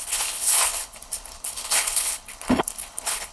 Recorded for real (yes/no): no